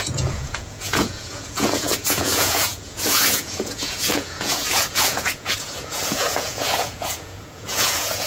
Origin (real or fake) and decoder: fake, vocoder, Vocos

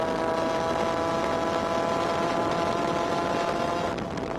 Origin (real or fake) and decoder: real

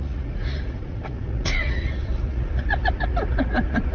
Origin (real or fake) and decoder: fake, vocoder, Vocos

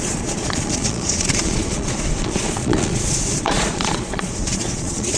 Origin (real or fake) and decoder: fake, vocoder, Vocos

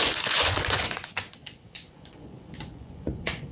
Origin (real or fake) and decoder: fake, vocoder, Vocos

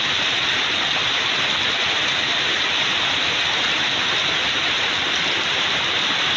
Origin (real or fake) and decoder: real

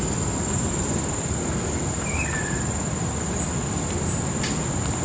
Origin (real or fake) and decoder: real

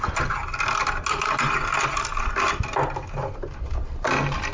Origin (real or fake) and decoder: real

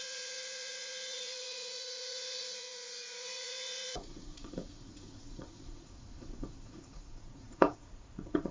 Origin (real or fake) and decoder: fake, vocoder, Vocos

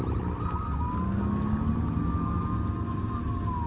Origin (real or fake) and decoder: real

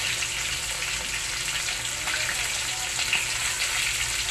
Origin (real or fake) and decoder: real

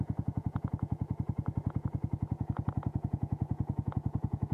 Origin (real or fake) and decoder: fake, vocoder, Vocos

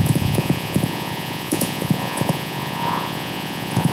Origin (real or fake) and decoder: fake, vocoder, Vocos